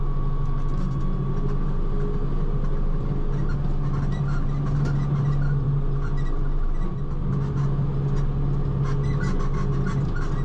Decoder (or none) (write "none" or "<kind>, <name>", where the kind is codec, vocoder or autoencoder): none